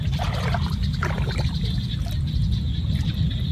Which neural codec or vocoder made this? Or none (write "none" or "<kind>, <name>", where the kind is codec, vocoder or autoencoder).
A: none